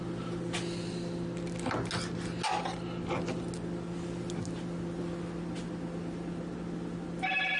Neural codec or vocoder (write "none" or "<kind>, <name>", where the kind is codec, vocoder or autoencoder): none